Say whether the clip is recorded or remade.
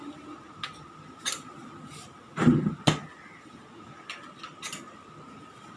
recorded